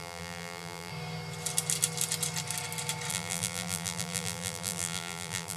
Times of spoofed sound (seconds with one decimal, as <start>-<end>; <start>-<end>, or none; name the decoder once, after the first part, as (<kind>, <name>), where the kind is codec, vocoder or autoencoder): 0.0-0.9 (vocoder, BigVGAN v2); 3.1-5.6

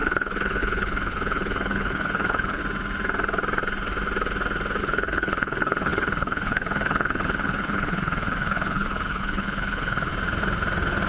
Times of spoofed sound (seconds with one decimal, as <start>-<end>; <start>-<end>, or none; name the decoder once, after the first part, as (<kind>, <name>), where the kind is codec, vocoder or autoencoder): 0.0-2.6 (codec, HILCodec); 4.8-10.1